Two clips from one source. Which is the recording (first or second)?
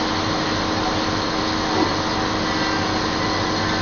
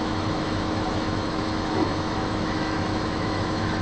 first